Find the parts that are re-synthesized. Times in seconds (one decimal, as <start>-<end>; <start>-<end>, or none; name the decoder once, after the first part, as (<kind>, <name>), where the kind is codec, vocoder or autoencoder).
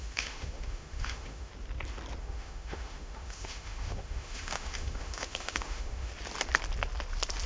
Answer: 0.0-1.5 (autoencoder, DAC-VAE); 2.2-6.1